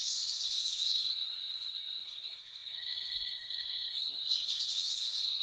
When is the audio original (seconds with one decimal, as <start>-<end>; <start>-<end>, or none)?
none